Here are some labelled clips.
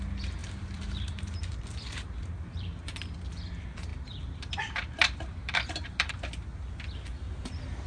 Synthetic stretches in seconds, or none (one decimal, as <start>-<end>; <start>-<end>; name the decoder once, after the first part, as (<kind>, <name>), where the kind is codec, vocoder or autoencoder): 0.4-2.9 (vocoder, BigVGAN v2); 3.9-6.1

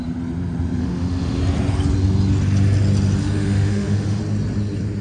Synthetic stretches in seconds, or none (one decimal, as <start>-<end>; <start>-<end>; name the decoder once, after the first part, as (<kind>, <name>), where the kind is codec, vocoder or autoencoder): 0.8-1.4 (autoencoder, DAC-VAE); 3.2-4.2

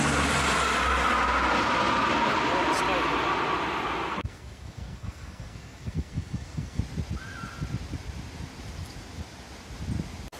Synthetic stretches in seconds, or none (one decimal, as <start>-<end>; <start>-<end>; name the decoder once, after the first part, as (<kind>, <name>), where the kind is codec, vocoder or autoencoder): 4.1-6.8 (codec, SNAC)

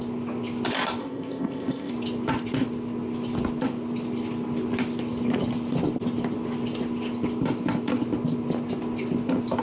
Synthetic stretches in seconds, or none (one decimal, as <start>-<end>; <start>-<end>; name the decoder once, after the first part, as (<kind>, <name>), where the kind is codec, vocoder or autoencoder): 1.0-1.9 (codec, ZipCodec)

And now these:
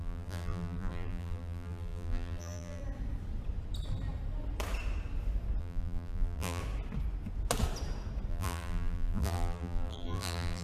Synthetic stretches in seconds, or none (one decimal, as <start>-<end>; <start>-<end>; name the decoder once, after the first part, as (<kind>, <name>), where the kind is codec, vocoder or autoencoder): 0.0-2.8 (vocoder, BigVGAN v2); 5.6-6.6; 8.3-10.6

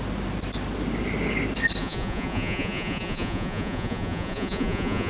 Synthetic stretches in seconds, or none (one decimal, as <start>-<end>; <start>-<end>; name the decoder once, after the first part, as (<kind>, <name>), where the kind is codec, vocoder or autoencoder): 1.8-5.1 (vocoder, Vocos)